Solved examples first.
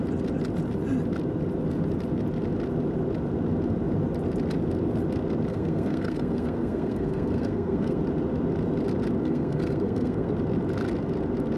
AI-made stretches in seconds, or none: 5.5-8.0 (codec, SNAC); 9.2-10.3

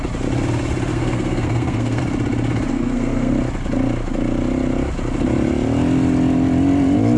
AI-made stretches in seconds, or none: 0.9-2.0 (codec, SNAC); 2.7-3.3

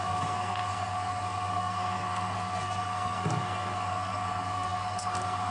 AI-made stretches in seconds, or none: 0.0-5.5 (codec, SNAC)

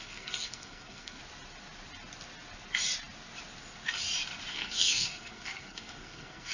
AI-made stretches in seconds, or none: 0.0-1.2 (codec, SNAC); 4.5-6.5

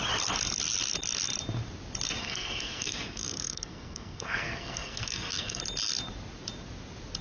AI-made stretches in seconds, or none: 2.2-5.6 (codec, SNAC)

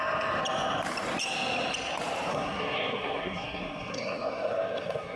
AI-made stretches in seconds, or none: 2.3-5.2 (codec, SNAC)